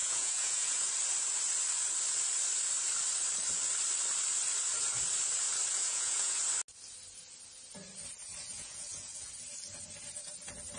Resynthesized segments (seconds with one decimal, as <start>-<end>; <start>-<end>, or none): 0.0-0.9; 5.8-6.4; 8.4-9.3